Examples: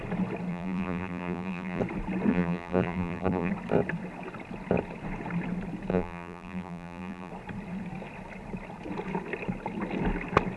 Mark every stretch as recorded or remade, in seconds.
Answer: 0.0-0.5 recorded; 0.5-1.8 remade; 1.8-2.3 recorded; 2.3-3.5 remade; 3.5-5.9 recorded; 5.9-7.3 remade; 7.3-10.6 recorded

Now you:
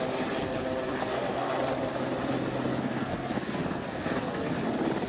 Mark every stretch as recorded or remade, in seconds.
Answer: 0.0-1.0 recorded; 1.0-1.5 remade; 1.5-2.7 recorded; 2.7-4.5 remade; 4.5-5.1 recorded

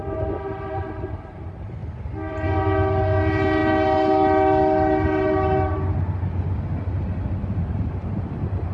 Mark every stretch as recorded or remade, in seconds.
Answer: 0.0-8.7 recorded

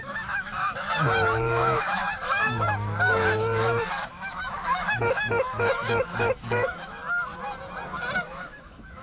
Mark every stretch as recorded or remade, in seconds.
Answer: 0.0-7.0 remade; 7.0-8.2 recorded; 8.2-9.0 remade

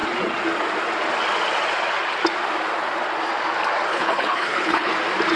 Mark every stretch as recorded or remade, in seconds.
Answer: 0.0-3.9 recorded; 3.9-4.9 remade; 4.9-5.4 recorded

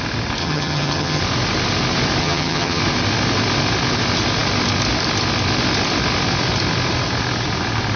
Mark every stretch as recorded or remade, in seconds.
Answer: 0.0-0.4 recorded; 0.4-1.2 remade; 1.2-2.2 recorded; 2.2-2.8 remade; 2.8-8.0 recorded